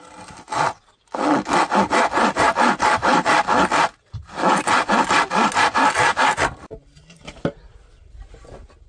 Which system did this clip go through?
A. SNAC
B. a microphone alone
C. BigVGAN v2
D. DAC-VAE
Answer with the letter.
B